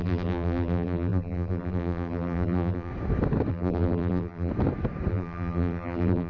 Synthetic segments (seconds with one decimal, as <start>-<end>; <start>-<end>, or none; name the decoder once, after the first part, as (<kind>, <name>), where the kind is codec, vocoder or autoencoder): 0.0-2.9 (vocoder, BigVGAN v2); 3.5-4.5; 5.1-6.3